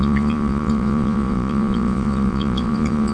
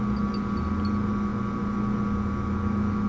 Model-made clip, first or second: first